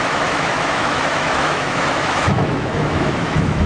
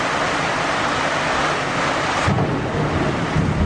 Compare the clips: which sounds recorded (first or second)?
second